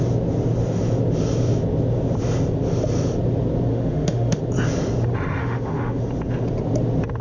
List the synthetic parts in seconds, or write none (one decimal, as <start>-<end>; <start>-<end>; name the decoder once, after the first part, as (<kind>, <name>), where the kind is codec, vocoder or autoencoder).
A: 3.7-4.4 (autoencoder, DAC-VAE); 5.4-6.0